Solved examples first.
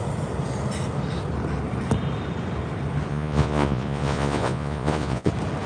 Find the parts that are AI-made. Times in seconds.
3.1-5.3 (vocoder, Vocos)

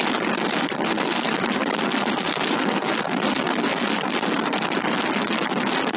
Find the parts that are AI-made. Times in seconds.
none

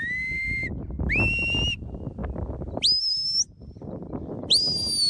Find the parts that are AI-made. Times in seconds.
none

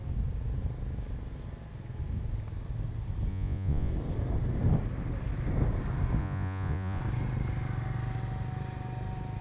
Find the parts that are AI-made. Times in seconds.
3.3-3.9 (vocoder, Vocos); 6.2-7.0

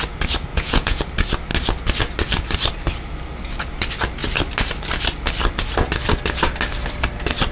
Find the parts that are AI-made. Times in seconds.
0.5-1.0 (vocoder, Vocos)

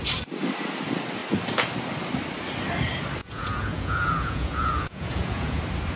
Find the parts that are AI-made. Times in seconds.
3.2-5.6 (vocoder, Vocos)

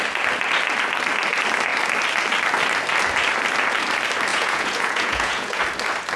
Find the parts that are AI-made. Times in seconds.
4.3-5.6 (vocoder, Vocos)